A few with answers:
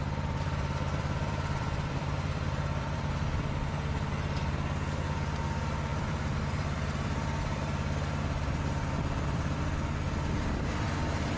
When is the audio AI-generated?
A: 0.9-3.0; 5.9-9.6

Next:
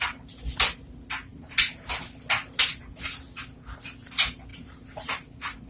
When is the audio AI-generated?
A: 1.3-2.0; 4.5-5.3

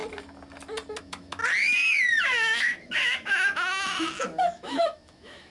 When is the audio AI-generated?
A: 1.0-1.4; 2.2-5.5

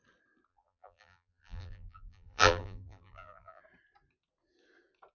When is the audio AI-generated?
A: 0.5-3.6

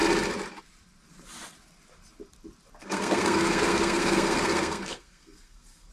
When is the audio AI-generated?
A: 2.8-5.9

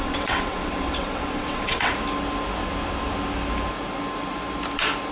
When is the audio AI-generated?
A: 0.0-1.9